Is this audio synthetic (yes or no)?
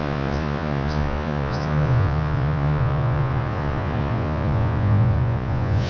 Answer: yes